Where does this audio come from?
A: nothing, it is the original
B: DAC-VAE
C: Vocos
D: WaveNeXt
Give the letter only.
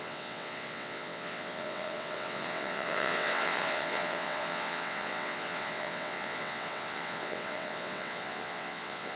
D